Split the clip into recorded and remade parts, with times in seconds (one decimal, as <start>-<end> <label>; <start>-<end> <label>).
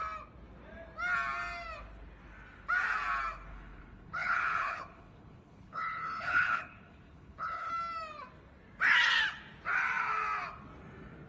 0.0-3.5 recorded; 3.5-7.7 remade; 7.7-11.3 recorded